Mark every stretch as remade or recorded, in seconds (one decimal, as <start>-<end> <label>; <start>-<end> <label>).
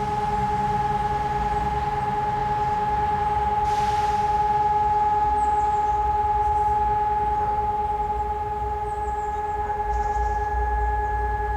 0.0-11.6 recorded